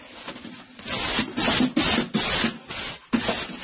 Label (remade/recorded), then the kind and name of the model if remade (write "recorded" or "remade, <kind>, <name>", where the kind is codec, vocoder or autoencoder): recorded